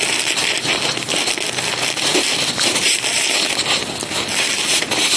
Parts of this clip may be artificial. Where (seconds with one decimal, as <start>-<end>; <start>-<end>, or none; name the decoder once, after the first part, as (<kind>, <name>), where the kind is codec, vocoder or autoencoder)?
none